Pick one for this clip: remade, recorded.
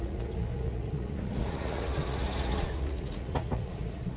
remade